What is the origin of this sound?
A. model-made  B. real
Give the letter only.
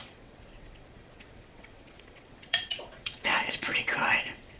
A